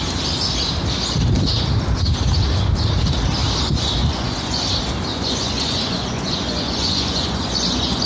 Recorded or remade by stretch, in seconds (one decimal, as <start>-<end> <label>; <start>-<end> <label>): 0.0-4.0 recorded; 4.0-4.6 remade; 4.6-5.1 recorded; 5.1-8.1 remade